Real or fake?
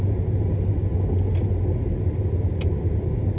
real